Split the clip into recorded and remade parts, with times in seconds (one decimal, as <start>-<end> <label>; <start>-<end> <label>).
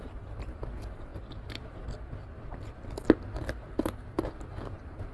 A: 0.0-1.1 remade; 1.1-3.7 recorded; 3.7-5.1 remade